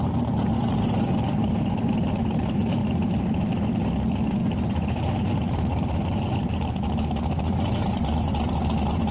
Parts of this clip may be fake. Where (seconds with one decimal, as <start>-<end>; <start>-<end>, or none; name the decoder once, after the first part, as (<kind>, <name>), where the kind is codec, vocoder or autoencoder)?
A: 0.0-2.8 (vocoder, BigVGAN v2); 3.9-9.1